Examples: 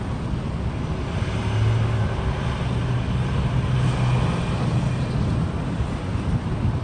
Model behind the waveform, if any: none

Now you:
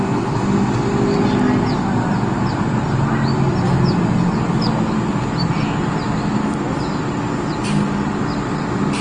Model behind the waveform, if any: none